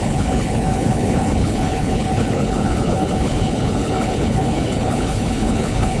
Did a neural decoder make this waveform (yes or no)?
yes